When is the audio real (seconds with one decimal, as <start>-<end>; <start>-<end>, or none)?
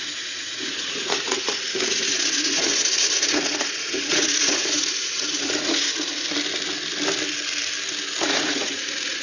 6.2-8.2